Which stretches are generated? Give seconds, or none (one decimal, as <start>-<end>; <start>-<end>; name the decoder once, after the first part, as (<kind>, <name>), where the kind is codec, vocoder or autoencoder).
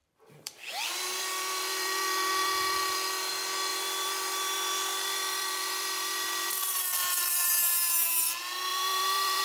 0.0-3.3 (vocoder, BigVGAN v2); 3.7-7.5; 8.7-9.4